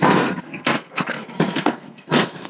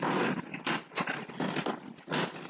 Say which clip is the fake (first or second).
first